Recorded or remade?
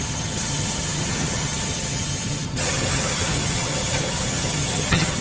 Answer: remade